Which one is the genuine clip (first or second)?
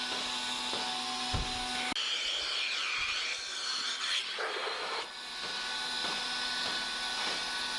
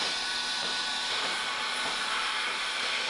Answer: first